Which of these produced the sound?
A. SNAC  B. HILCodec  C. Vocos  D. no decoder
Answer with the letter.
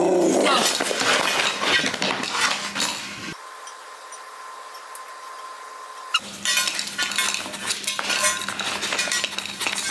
D